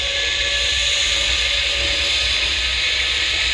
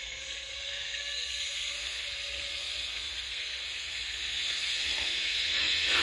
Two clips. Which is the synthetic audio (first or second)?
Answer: second